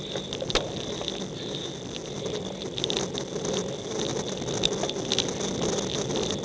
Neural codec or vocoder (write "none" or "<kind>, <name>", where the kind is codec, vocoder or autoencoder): none